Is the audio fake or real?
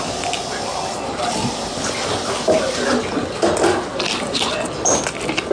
real